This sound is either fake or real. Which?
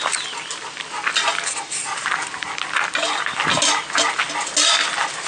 real